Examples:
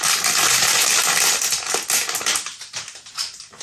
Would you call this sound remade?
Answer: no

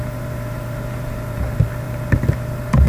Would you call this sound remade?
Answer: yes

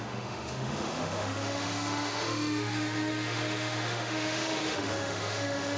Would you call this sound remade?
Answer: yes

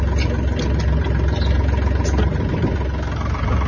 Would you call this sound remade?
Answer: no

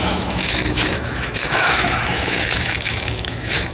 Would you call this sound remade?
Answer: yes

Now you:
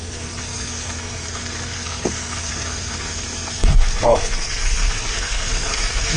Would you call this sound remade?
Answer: yes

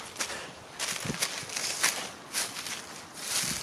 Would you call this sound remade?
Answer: no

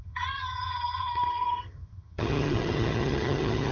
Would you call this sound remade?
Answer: yes